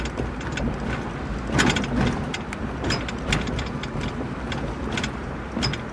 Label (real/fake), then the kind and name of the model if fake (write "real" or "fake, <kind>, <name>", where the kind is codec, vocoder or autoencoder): real